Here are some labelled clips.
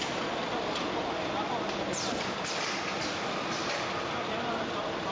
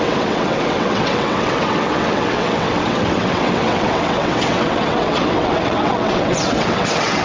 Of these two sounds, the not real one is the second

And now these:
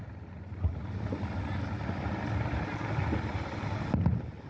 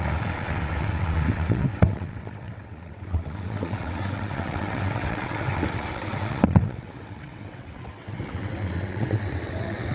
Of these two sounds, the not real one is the second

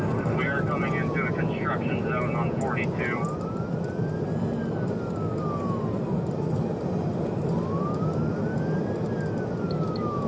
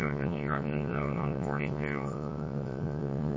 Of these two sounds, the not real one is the second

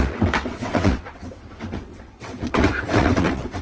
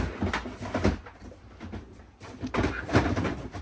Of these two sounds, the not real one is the first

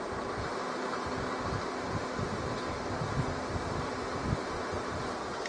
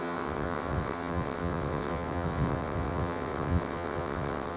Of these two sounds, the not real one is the second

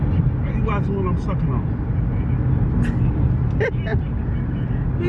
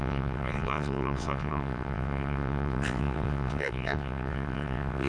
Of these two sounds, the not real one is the second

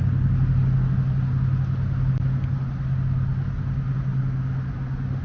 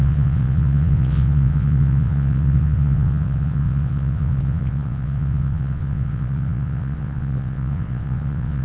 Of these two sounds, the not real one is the second